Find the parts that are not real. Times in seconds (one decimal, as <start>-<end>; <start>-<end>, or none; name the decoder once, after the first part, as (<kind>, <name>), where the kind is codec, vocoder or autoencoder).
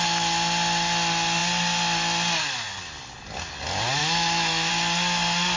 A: 4.0-4.7 (autoencoder, DAC-VAE)